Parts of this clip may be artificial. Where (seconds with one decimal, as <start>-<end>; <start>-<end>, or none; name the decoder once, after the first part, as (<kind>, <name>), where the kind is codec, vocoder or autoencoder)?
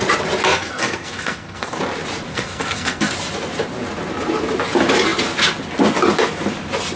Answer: 0.5-1.8 (codec, SNAC); 2.3-3.1